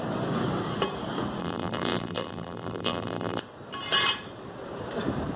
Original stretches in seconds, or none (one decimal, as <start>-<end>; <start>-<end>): 0.0-1.4; 3.4-5.4